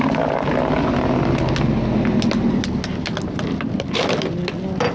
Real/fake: real